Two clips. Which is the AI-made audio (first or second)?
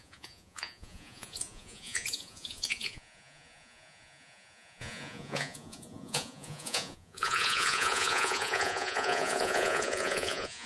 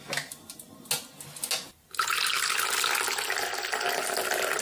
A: first